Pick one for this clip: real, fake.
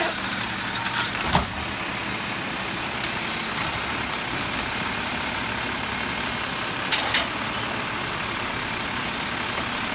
real